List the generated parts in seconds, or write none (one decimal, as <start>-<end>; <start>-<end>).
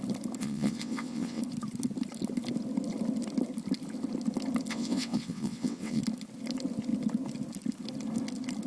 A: 0.4-1.4; 4.7-6.0